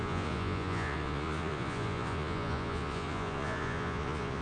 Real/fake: fake